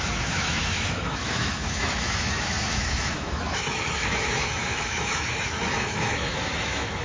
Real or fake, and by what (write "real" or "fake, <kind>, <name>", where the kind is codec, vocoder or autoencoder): fake, autoencoder, DAC-VAE